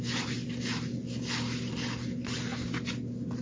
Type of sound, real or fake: real